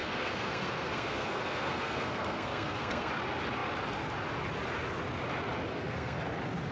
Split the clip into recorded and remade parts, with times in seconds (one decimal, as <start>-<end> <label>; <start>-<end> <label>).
0.0-3.1 remade; 3.1-5.7 recorded; 5.7-6.2 remade; 6.2-6.7 recorded